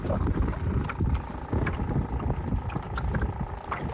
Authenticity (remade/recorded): recorded